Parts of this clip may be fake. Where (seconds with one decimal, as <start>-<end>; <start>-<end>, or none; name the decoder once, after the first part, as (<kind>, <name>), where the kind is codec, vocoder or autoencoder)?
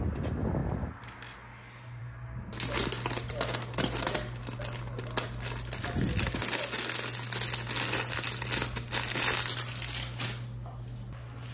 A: none